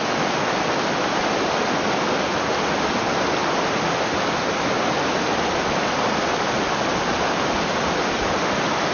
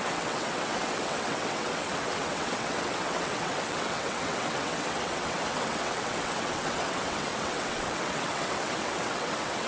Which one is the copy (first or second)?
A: second